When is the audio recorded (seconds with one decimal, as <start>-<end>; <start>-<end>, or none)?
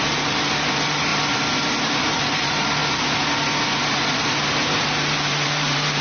1.1-2.0; 2.8-4.5